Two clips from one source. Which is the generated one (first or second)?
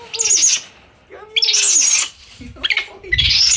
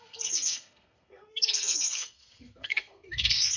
second